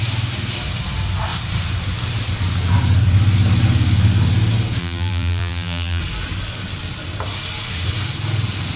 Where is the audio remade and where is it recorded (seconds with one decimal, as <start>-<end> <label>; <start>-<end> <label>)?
0.0-4.8 recorded; 4.8-6.0 remade; 6.0-8.8 recorded